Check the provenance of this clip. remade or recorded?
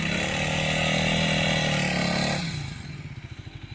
recorded